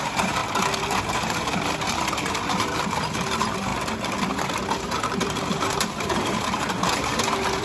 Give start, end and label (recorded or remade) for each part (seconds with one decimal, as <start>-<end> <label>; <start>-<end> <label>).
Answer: 0.0-0.4 remade; 0.4-1.0 recorded; 1.0-3.7 remade; 3.7-4.8 recorded; 4.8-7.6 remade